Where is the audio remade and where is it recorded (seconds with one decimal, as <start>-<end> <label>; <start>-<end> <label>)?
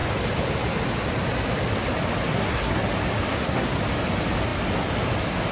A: 0.0-2.3 recorded; 2.3-2.8 remade; 2.8-3.3 recorded; 3.3-3.8 remade; 3.8-5.5 recorded